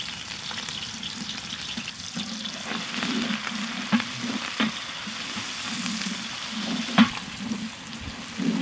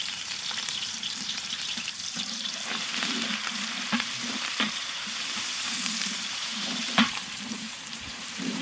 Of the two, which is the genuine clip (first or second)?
first